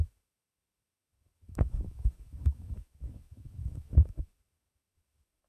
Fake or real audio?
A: fake